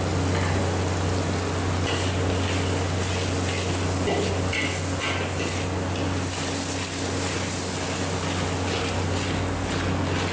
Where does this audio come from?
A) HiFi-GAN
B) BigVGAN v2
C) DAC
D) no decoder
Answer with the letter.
D